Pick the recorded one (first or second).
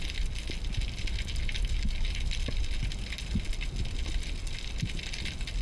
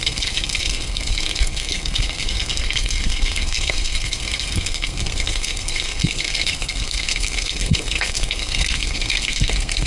first